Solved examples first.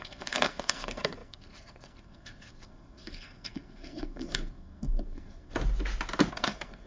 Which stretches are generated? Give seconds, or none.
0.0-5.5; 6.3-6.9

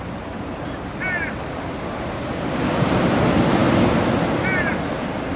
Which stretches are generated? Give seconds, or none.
none

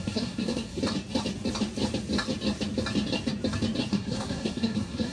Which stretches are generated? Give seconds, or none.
0.0-0.8; 3.9-5.1

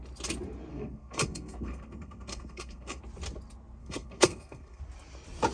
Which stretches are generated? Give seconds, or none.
0.7-3.0; 3.8-4.8